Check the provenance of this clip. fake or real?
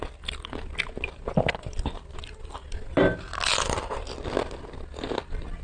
real